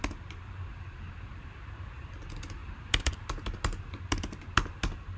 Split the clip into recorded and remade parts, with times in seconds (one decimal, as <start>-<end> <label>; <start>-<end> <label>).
0.0-2.6 recorded; 2.6-3.1 remade; 3.1-5.2 recorded